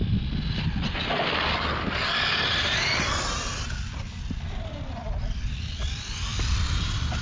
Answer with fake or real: real